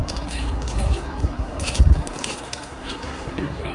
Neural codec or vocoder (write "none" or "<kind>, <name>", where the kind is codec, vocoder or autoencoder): codec, SNAC